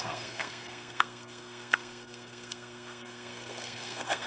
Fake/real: fake